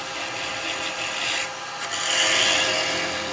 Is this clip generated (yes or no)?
no